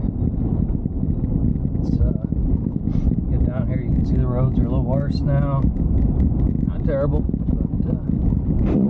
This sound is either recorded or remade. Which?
recorded